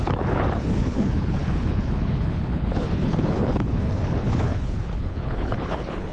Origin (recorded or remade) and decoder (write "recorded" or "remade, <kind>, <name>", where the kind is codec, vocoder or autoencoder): remade, codec, HILCodec